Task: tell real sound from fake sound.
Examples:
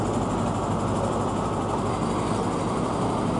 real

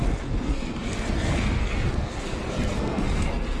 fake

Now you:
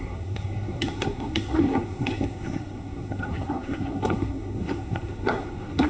fake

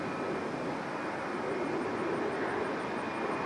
real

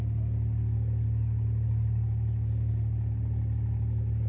real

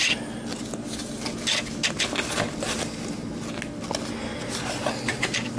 real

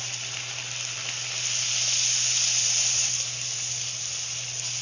real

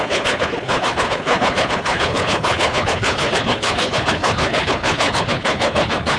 fake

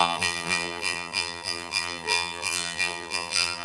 fake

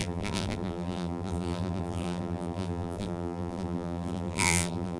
fake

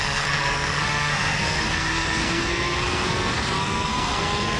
fake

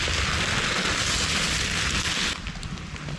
real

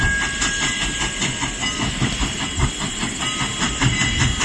real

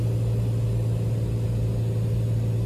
real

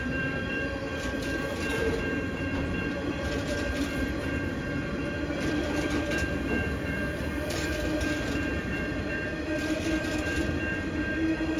fake